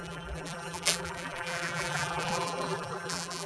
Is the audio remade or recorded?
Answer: remade